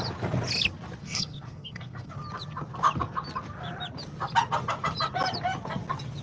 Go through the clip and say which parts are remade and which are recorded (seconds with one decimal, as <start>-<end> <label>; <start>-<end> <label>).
0.0-1.0 recorded; 1.0-2.1 remade; 2.1-6.2 recorded